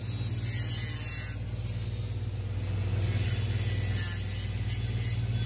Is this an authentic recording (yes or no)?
yes